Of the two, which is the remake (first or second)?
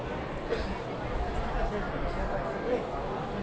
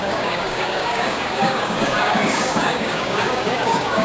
second